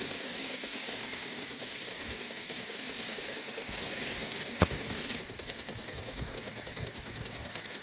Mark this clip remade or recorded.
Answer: remade